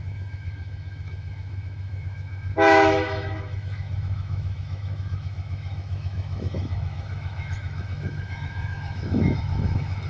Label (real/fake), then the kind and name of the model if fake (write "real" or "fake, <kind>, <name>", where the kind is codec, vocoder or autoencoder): fake, autoencoder, DAC-VAE